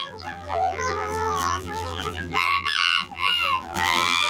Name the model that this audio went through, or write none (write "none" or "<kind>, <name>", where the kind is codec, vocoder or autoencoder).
vocoder, BigVGAN v2